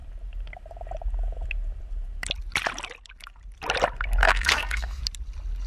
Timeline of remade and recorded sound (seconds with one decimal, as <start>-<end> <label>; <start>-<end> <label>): 0.0-4.2 recorded; 4.2-5.0 remade; 5.0-5.7 recorded

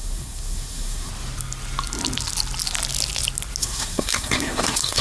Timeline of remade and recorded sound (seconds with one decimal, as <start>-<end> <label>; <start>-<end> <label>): 0.0-1.1 remade; 1.1-3.6 recorded; 3.6-5.0 remade